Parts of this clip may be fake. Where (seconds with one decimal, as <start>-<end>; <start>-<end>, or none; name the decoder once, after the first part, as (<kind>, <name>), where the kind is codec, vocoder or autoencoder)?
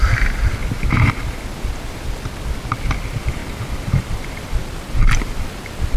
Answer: 0.6-2.8 (vocoder, BigVGAN v2); 3.4-6.0